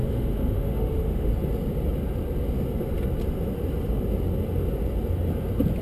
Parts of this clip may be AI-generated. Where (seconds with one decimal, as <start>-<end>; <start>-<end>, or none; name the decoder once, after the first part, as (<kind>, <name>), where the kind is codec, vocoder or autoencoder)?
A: 0.0-1.3 (autoencoder, DAC-VAE)